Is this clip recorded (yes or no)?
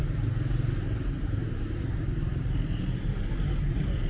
no